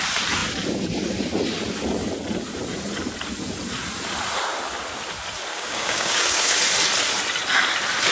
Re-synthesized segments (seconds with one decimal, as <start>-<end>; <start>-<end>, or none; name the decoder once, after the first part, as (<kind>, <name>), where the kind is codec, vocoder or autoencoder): 5.5-6.6 (codec, DAC)